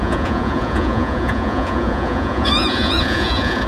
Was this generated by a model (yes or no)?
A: yes